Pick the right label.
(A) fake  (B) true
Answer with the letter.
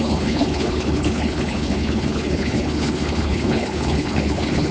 A